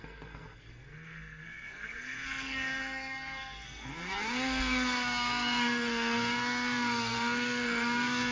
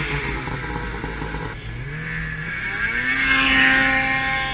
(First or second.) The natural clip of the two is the second